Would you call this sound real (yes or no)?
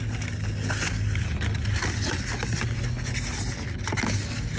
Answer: yes